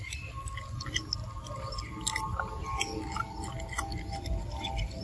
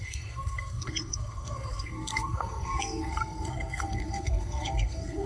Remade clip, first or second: second